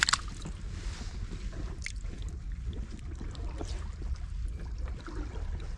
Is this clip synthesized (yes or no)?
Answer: no